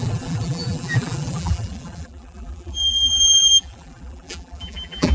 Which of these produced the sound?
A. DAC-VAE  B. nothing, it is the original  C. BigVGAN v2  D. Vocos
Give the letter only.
C